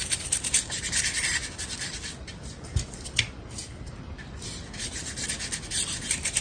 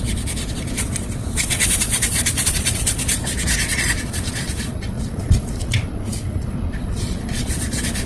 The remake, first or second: second